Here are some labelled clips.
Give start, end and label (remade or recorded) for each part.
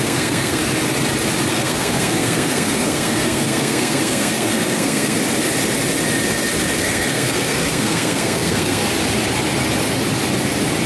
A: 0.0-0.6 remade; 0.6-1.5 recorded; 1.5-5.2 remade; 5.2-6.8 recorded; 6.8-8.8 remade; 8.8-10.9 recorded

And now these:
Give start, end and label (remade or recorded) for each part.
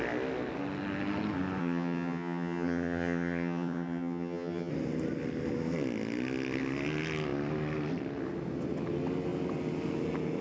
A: 0.0-1.6 recorded; 1.6-4.7 remade; 4.7-10.4 recorded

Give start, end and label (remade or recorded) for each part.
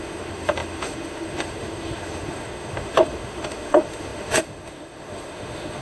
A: 0.0-5.8 remade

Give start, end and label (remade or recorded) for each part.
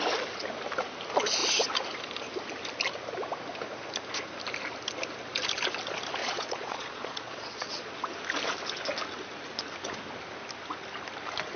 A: 0.0-6.2 recorded; 6.2-7.9 remade; 7.9-11.6 recorded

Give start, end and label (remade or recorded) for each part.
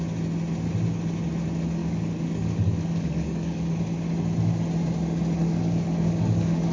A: 0.0-1.8 recorded; 1.8-3.7 remade; 3.7-5.4 recorded; 5.4-6.7 remade